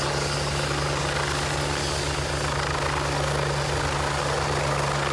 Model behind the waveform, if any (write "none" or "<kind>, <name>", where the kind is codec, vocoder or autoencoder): none